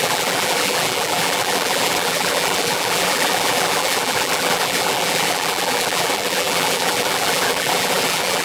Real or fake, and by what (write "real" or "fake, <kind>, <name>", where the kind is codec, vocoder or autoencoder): fake, vocoder, BigVGAN v2